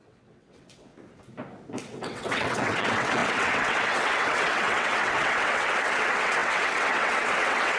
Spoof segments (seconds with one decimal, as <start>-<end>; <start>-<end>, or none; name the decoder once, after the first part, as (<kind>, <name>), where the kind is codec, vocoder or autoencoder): 0.0-0.9 (vocoder, WaveNeXt); 1.8-7.8